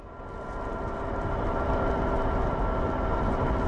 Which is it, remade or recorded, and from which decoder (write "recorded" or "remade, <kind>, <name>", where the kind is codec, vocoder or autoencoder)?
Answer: recorded